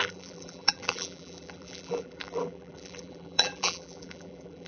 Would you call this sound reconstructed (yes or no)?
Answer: yes